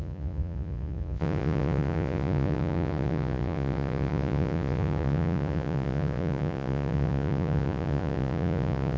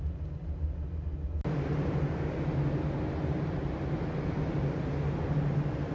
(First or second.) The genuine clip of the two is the second